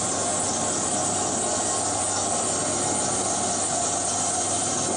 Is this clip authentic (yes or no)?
yes